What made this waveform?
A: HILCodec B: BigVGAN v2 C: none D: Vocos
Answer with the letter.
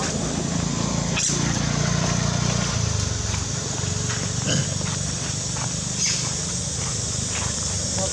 C